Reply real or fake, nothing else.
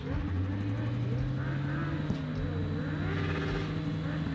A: real